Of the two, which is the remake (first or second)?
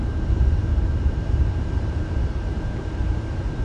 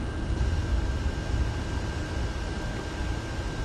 first